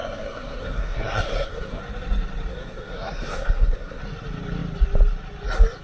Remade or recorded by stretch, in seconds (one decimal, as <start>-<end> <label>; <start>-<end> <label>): 0.0-1.8 remade; 1.8-2.5 recorded; 2.5-4.0 remade; 4.0-5.8 recorded